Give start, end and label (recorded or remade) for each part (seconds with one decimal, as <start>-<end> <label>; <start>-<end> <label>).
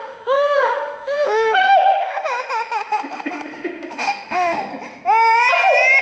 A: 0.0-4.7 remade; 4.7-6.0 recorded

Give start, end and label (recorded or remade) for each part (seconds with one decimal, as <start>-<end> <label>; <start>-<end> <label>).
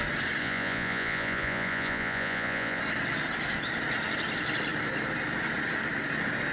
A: 0.0-0.4 recorded; 0.4-2.8 remade; 2.8-6.5 recorded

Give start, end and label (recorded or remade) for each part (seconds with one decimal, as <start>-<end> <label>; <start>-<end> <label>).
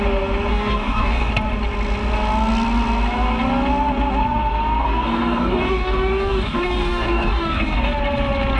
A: 0.0-0.5 recorded; 0.5-1.3 remade; 1.3-4.8 recorded; 4.8-7.9 remade; 7.9-8.6 recorded